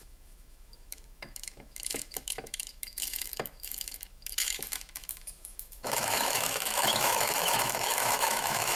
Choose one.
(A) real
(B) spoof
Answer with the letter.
B